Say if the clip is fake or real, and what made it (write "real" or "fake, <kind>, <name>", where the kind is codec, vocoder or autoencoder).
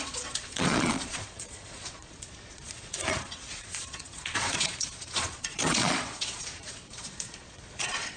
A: fake, vocoder, Vocos